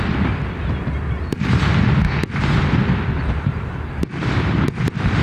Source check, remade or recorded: recorded